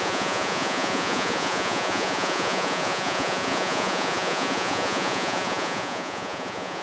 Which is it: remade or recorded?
remade